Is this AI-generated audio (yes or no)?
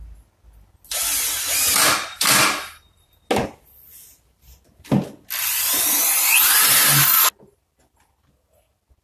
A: no